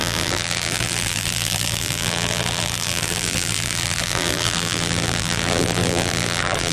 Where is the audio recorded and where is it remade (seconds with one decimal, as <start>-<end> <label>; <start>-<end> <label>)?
0.0-6.7 remade